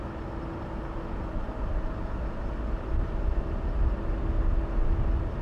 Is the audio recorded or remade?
recorded